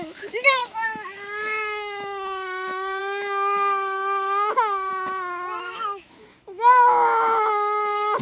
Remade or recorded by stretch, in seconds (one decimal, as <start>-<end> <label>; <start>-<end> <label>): 0.0-4.9 remade; 4.9-5.6 recorded; 5.6-8.2 remade